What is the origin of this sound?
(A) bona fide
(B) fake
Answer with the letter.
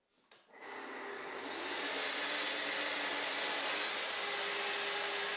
A